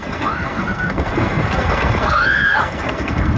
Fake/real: fake